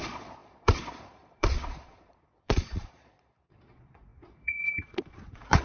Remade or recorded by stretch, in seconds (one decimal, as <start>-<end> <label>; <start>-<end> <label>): 0.0-5.6 remade